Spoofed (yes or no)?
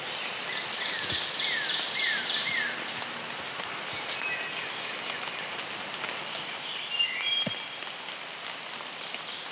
no